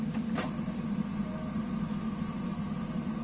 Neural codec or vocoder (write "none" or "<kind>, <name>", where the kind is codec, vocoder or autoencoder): none